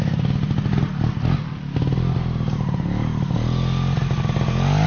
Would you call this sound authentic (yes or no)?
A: yes